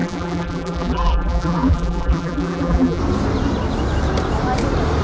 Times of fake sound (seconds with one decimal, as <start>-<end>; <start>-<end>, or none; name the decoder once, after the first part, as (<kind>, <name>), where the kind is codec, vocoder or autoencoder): 0.0-3.0 (vocoder, BigVGAN v2)